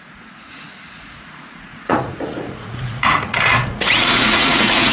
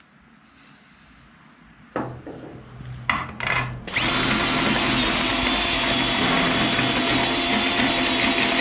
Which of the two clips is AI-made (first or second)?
first